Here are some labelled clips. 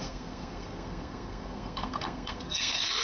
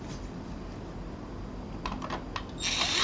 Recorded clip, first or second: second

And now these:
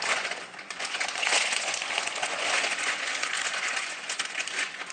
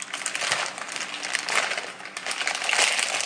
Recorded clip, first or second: second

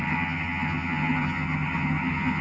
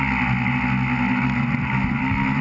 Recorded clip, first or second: second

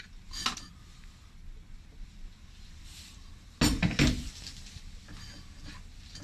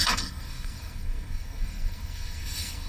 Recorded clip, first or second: first